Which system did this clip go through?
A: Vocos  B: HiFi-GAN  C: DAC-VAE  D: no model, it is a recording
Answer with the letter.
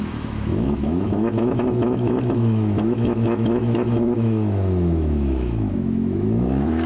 C